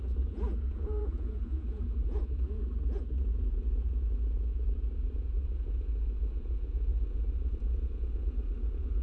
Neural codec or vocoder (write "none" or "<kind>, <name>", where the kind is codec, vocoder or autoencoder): vocoder, Vocos